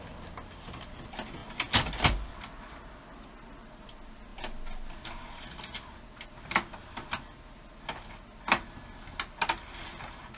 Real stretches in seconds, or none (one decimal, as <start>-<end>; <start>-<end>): 0.0-10.4